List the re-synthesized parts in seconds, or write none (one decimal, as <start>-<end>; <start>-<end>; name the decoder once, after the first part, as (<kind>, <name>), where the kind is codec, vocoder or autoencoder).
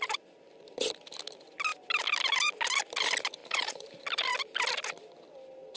3.4-3.9 (vocoder, BigVGAN v2)